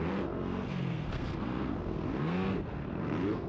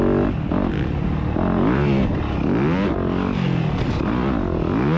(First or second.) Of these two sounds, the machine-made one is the first